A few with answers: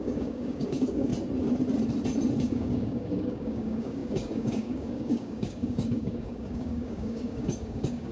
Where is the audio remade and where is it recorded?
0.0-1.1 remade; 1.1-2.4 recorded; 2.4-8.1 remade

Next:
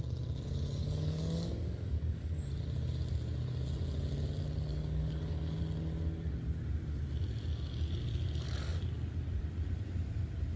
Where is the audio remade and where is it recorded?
0.0-0.8 recorded; 0.8-2.4 remade; 2.4-4.7 recorded; 4.7-5.6 remade; 5.6-10.6 recorded

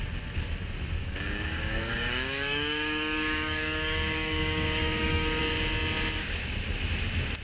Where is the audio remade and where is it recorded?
0.0-1.0 recorded; 1.0-5.4 remade; 5.4-7.4 recorded